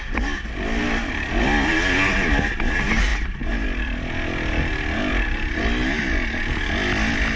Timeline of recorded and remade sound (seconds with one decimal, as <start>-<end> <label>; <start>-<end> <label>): 0.0-7.4 recorded